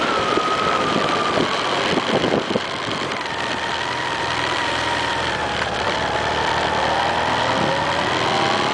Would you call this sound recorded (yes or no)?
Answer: no